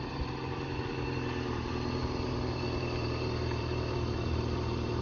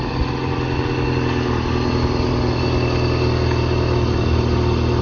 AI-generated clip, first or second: first